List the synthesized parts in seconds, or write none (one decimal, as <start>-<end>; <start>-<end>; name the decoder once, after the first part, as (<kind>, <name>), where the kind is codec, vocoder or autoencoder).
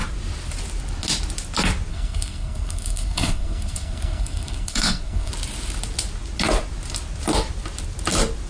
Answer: 1.9-5.3 (codec, SNAC)